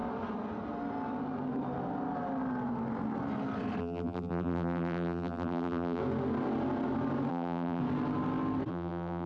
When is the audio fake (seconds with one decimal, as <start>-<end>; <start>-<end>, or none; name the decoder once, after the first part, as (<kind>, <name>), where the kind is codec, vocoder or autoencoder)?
3.8-6.0 (vocoder, BigVGAN v2); 7.3-7.8; 8.7-9.3